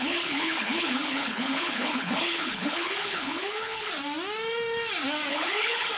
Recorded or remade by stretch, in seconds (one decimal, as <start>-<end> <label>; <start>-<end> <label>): 0.0-3.9 remade; 3.9-5.3 recorded; 5.3-6.0 remade